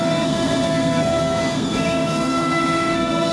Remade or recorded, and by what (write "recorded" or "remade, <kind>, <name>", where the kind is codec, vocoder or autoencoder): remade, codec, SNAC